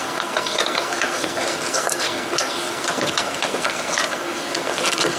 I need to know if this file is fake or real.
fake